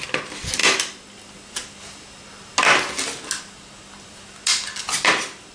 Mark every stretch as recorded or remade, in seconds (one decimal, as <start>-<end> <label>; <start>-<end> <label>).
0.0-5.5 recorded